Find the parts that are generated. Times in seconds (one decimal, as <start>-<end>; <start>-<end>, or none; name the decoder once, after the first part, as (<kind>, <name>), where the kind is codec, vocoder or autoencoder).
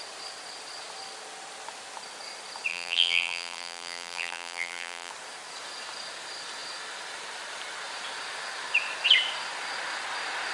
2.7-5.1 (vocoder, BigVGAN v2)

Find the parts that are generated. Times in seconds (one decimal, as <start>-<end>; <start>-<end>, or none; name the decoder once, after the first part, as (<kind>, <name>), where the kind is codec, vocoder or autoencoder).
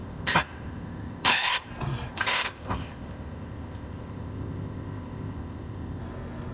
0.0-1.7 (codec, ZipCodec); 2.1-6.0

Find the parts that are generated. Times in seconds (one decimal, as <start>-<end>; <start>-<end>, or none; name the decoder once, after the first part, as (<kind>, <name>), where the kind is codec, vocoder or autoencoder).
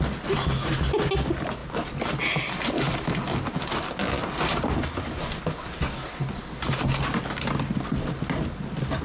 none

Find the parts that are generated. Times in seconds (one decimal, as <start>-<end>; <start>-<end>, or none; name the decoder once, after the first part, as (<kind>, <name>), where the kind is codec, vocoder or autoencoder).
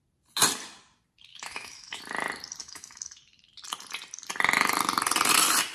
1.3-2.0 (autoencoder, DAC-VAE); 2.6-3.2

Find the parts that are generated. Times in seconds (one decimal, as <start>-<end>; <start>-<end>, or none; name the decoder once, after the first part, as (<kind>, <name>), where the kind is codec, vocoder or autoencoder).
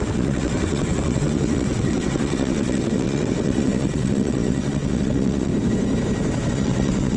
0.0-5.5 (vocoder, WaveNeXt); 6.5-7.2